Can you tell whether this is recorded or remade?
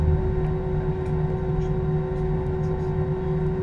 recorded